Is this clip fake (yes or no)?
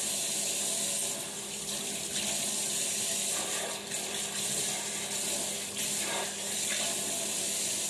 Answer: no